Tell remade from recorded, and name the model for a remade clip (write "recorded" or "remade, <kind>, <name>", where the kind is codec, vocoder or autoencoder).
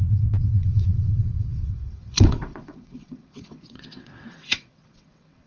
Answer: remade, vocoder, WaveNeXt